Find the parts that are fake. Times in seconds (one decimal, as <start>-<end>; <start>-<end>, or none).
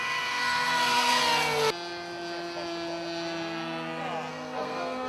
0.0-1.2; 4.3-5.1